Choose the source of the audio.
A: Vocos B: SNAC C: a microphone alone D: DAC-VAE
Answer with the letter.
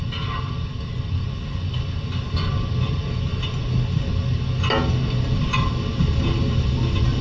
C